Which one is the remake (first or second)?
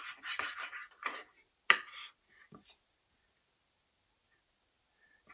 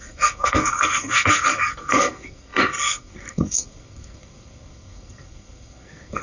second